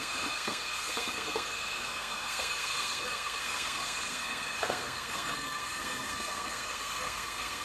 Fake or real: fake